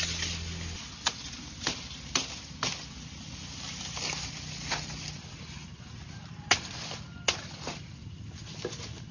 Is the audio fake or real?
real